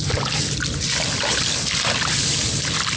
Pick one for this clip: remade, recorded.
recorded